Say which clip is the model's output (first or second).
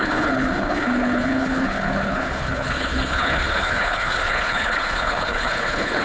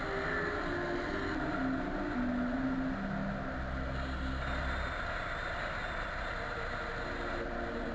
first